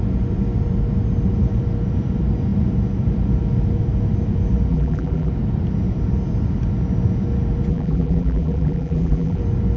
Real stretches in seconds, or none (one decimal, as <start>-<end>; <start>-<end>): 0.0-4.7; 5.3-7.7; 9.4-9.8